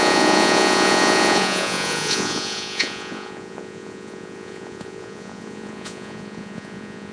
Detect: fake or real fake